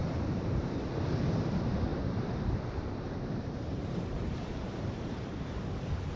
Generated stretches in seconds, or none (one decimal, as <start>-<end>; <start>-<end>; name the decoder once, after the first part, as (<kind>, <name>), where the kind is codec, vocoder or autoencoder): 0.0-0.6 (vocoder, BigVGAN v2); 1.9-5.6